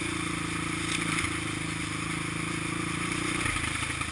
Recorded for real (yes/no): yes